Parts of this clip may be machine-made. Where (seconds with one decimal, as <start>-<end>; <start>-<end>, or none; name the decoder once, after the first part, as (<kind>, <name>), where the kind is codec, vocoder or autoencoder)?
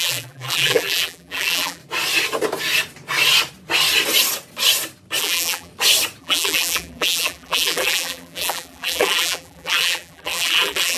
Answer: 0.0-1.8 (vocoder, BigVGAN v2); 5.2-5.7; 6.2-11.0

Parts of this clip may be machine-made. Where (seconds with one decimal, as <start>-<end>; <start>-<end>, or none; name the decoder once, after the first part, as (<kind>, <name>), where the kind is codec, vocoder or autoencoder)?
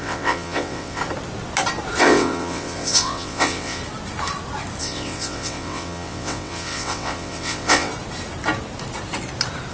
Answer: 0.0-1.0 (vocoder, WaveNeXt); 2.0-3.8; 4.8-7.9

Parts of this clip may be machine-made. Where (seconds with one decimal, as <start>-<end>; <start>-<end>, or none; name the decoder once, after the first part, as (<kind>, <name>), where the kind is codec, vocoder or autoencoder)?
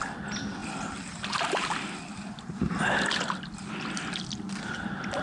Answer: none